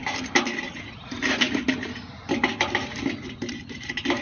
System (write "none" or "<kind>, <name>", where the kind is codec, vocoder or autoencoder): none